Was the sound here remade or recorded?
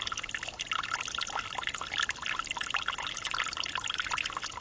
recorded